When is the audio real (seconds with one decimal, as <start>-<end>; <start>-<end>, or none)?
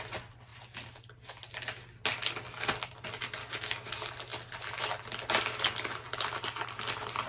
0.0-3.4; 3.9-7.3